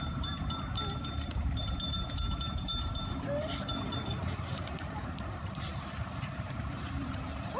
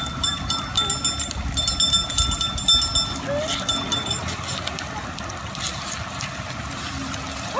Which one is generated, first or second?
first